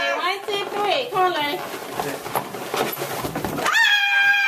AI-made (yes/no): no